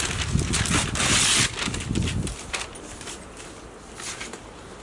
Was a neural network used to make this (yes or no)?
no